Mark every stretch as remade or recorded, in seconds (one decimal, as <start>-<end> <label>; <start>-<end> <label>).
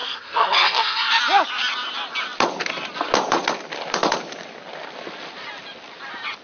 0.0-1.1 remade; 1.1-6.4 recorded